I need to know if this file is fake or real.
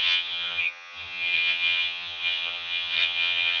fake